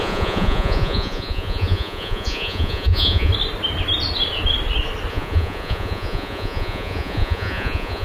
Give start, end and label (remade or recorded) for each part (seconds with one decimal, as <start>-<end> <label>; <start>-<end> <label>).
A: 0.0-3.3 remade; 3.3-5.1 recorded; 5.1-8.0 remade